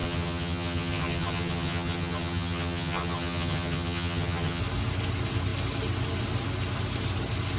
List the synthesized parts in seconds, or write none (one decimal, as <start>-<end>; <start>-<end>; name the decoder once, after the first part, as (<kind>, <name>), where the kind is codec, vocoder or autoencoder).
0.0-4.6 (vocoder, HiFi-GAN)